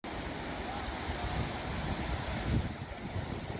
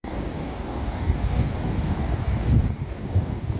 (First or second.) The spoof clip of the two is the second